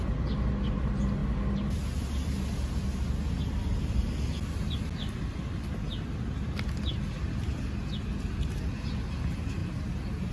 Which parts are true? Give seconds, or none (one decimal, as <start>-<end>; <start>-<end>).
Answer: 0.0-10.3

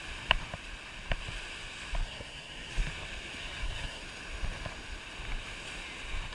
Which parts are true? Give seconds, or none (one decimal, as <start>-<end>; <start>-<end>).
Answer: 0.0-2.0; 2.7-3.4; 4.0-6.3

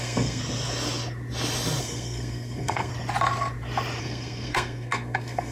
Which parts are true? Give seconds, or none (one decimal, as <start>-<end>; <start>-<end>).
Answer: 0.4-1.8; 2.9-4.0

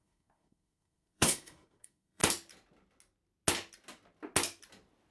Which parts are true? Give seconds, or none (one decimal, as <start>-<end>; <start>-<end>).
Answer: 2.2-5.1

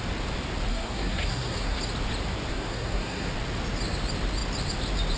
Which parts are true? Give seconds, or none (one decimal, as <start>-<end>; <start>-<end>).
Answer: 0.0-0.7; 1.8-2.5; 3.3-5.2

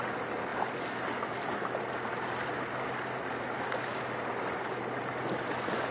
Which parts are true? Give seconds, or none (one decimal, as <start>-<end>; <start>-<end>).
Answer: 0.0-5.9

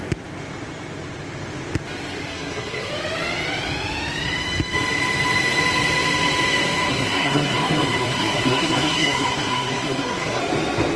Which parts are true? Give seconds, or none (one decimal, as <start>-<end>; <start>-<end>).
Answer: 0.0-2.3; 2.9-6.9; 10.4-11.0